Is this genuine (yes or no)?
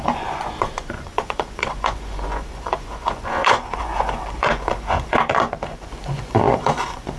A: no